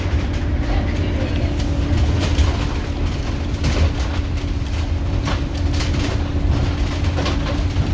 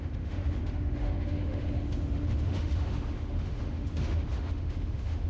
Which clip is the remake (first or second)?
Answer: second